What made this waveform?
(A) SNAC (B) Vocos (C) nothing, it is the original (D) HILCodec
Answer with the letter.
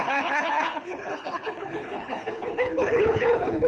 D